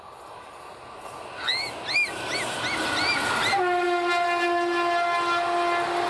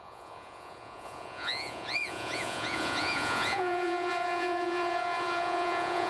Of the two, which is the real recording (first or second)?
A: first